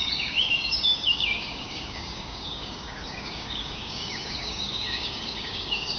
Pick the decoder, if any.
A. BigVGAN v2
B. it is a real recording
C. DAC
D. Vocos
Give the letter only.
C